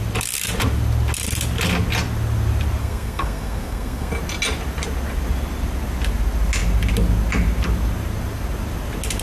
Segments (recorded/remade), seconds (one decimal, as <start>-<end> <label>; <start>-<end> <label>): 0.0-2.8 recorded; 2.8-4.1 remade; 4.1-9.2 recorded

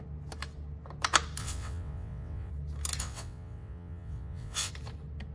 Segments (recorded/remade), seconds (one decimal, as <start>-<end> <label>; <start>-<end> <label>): 0.0-1.4 recorded; 1.4-2.5 remade; 2.5-3.0 recorded; 3.0-4.7 remade; 4.7-5.3 recorded

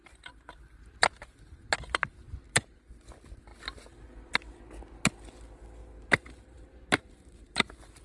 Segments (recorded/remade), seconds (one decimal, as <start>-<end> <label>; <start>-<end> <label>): 0.0-2.9 remade; 2.9-5.8 recorded; 5.8-8.0 remade

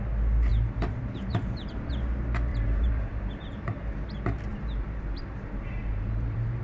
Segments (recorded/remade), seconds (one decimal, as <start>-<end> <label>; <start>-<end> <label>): 0.0-0.5 recorded; 0.5-1.9 remade; 1.9-2.5 recorded; 2.5-3.8 remade; 3.8-4.5 recorded; 4.5-6.6 remade